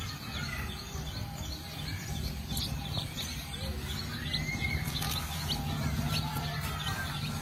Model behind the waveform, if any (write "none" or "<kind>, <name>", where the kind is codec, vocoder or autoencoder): none